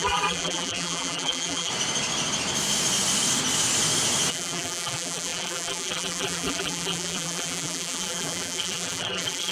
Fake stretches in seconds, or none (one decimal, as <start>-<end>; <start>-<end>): 0.0-1.7; 4.3-9.5